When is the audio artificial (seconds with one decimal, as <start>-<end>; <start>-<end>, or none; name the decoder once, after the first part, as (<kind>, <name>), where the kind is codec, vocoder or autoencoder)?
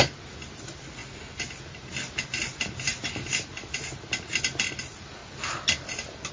none